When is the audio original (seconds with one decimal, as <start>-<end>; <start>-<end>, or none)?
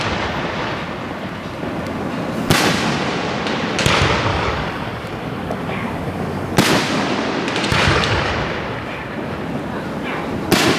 0.0-4.3; 6.5-7.7; 8.3-10.8